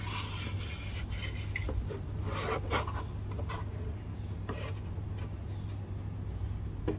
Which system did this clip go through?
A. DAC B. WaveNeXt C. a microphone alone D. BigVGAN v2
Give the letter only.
C